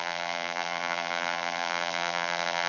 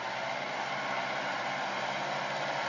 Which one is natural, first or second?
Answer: second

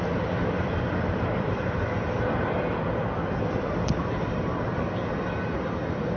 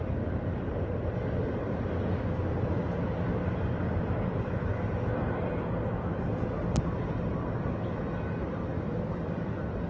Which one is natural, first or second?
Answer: second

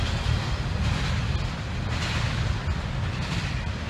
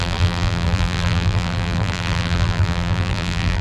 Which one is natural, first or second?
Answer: first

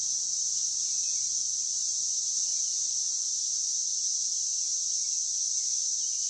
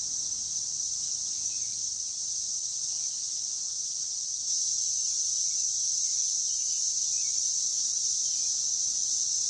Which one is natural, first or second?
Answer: second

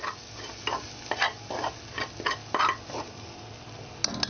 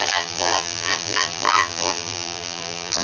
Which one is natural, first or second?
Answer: first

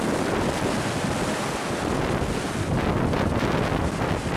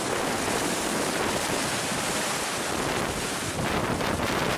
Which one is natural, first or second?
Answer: first